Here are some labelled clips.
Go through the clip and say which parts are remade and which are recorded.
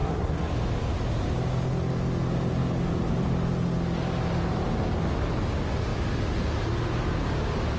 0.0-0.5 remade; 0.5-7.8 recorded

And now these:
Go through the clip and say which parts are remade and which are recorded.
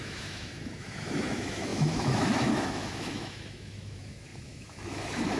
0.0-5.4 remade